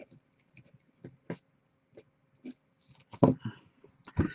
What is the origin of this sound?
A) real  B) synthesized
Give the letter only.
A